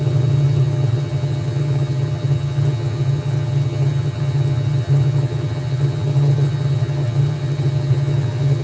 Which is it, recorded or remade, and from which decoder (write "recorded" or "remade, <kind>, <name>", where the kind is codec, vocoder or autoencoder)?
remade, vocoder, HiFi-GAN